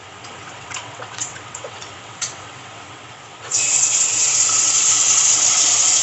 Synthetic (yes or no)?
yes